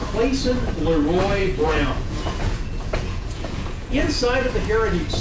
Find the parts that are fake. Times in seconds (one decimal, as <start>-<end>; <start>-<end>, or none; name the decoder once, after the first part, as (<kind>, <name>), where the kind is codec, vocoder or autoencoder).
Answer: 1.4-4.5 (vocoder, Vocos)